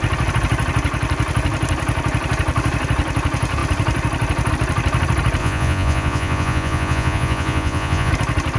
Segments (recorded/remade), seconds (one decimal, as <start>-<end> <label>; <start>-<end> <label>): 0.0-5.4 recorded; 5.4-8.1 remade; 8.1-8.6 recorded